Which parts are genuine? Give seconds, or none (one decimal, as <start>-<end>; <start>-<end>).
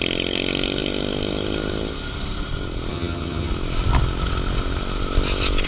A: 0.0-2.9; 3.5-5.7